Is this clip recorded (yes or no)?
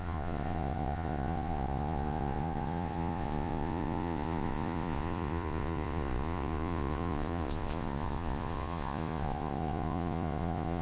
no